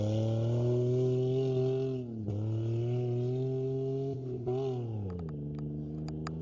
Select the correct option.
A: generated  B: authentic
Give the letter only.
B